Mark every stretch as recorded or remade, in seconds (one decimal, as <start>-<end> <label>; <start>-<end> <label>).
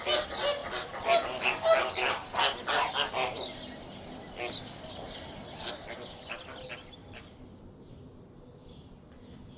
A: 0.0-9.6 recorded